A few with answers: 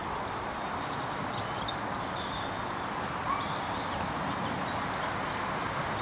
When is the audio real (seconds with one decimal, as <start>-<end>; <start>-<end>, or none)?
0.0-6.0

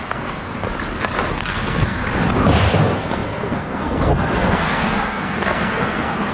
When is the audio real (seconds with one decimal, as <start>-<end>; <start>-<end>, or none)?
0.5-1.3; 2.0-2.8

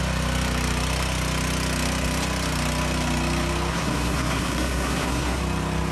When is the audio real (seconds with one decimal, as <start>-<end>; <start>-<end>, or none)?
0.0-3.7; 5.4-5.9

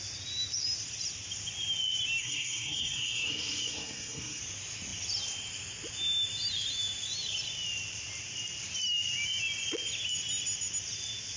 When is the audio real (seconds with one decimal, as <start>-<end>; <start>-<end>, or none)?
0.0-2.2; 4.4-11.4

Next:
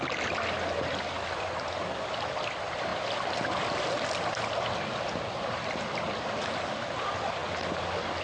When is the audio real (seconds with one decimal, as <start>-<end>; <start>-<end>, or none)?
0.0-8.2

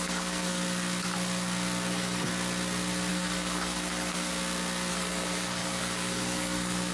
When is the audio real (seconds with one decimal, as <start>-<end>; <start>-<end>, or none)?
0.6-1.9; 2.3-3.1; 4.3-4.9

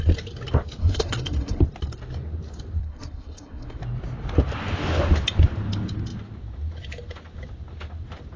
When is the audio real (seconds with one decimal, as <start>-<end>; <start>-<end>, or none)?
0.0-0.8; 1.6-2.8; 3.8-8.4